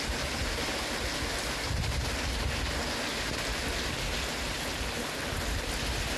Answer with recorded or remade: recorded